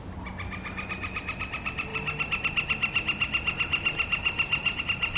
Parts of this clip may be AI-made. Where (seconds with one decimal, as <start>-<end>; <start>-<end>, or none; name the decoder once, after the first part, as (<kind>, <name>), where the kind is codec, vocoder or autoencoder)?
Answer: none